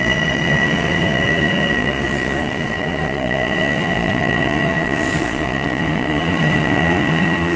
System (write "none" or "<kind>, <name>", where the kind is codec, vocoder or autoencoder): vocoder, Vocos